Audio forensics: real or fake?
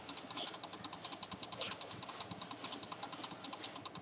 real